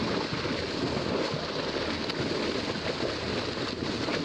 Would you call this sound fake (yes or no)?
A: no